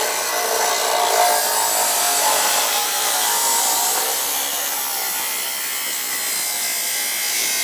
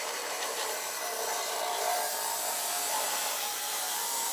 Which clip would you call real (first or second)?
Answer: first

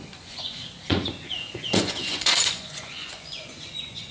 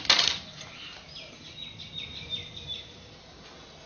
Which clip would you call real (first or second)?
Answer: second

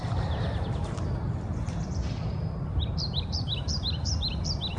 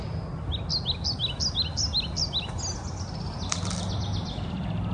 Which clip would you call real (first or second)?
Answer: second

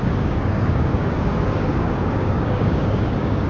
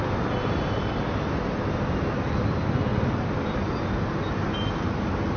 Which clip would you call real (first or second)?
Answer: second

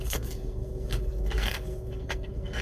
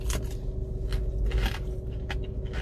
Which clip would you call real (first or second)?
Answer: second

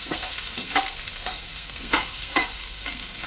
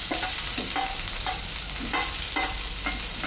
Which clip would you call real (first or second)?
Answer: second